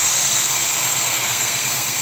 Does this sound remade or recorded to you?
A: remade